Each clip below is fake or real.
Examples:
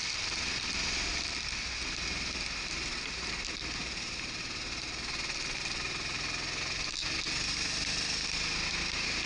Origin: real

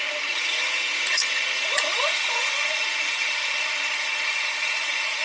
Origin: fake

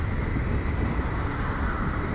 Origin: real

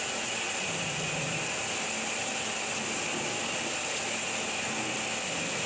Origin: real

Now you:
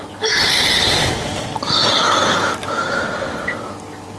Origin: real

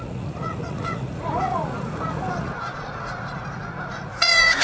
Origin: fake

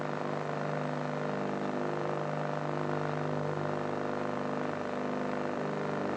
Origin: real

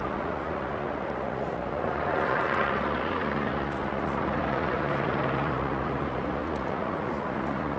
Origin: fake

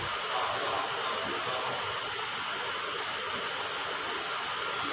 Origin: real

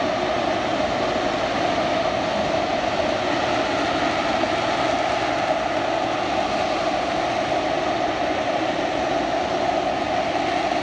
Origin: real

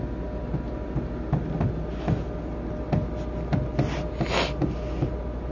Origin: real